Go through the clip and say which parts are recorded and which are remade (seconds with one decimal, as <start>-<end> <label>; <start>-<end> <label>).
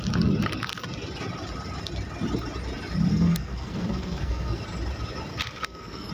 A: 0.0-3.1 recorded; 3.1-4.6 remade; 4.6-5.3 recorded; 5.3-6.1 remade